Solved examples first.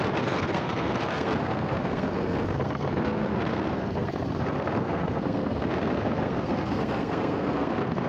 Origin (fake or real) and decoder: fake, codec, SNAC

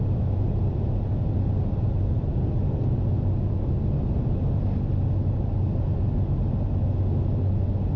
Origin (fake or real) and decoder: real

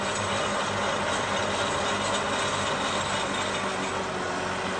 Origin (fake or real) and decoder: real